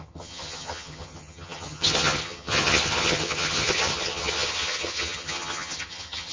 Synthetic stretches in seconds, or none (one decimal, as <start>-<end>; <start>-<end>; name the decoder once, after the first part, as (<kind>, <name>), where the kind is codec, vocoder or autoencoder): 0.0-6.3 (vocoder, HiFi-GAN)